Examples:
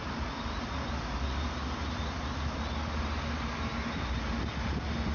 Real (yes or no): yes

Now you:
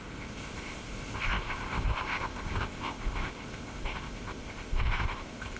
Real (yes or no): no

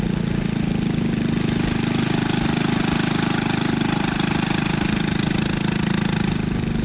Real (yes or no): yes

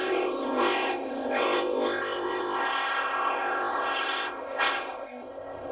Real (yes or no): no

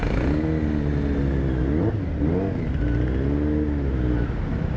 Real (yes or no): yes